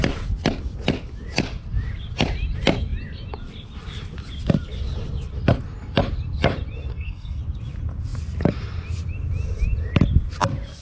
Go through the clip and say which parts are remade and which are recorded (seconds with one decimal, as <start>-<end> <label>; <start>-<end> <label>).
0.0-6.9 recorded; 6.9-7.4 remade; 7.4-10.8 recorded